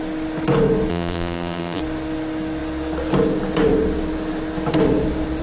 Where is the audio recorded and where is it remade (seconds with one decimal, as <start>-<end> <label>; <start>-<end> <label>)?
0.0-0.9 recorded; 0.9-1.8 remade; 1.8-5.4 recorded